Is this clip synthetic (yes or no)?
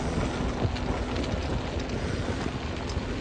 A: no